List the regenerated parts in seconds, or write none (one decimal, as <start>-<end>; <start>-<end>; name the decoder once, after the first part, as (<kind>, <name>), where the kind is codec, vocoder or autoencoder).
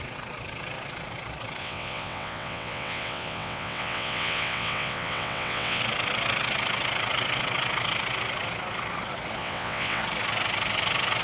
1.6-5.8 (vocoder, WaveNeXt); 9.4-10.0